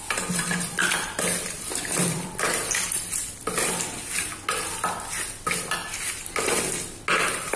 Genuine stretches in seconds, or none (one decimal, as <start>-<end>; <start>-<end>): 0.0-0.8; 3.5-5.8; 6.3-7.6